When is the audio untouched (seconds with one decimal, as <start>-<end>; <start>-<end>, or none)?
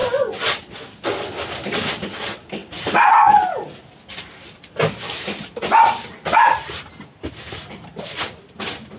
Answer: 0.0-1.7; 2.6-4.3